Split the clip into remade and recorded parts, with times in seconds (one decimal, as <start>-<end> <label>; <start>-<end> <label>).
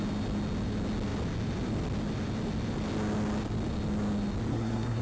0.0-4.5 recorded; 4.5-5.0 remade